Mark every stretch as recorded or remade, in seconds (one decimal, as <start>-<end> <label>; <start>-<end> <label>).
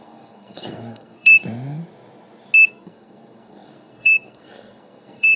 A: 0.0-1.4 remade; 1.4-2.7 recorded; 2.7-5.4 remade